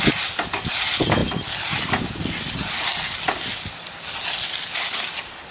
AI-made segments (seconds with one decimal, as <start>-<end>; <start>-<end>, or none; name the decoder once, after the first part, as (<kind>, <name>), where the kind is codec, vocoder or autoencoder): none